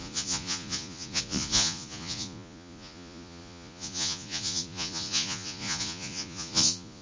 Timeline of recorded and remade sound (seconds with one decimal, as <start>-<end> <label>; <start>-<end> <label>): 0.0-7.0 remade